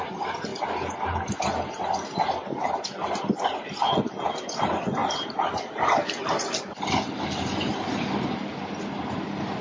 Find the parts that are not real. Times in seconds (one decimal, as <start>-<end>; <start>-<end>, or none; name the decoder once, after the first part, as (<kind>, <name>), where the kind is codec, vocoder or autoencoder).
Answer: 5.0-6.1 (vocoder, BigVGAN v2); 7.7-8.5